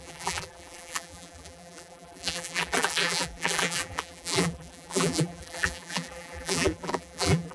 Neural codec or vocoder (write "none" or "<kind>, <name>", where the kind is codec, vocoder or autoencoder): vocoder, BigVGAN v2